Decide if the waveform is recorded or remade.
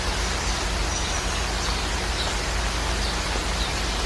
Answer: recorded